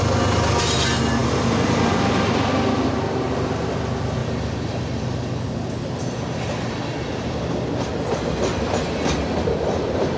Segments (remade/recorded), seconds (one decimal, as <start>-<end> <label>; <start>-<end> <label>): 0.0-10.2 recorded